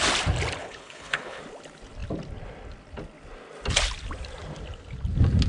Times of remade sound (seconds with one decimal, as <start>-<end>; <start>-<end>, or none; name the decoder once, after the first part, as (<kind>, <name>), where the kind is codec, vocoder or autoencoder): 0.6-1.4 (codec, HILCodec)